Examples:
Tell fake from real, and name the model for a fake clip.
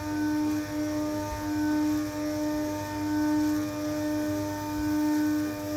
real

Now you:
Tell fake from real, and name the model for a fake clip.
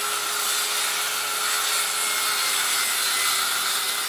real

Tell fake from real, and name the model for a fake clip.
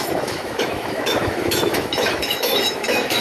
fake, autoencoder, DAC-VAE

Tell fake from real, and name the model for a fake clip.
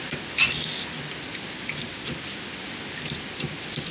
real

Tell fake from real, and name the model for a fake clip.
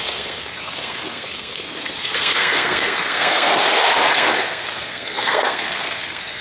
fake, codec, SNAC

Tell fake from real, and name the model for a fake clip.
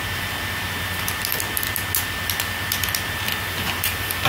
real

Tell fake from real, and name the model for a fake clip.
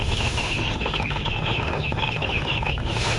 fake, autoencoder, DAC-VAE